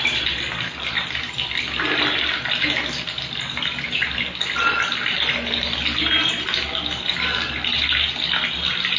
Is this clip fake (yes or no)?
yes